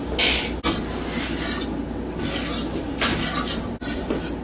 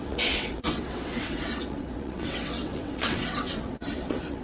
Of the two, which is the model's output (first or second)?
second